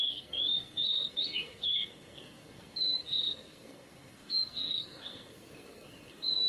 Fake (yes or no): yes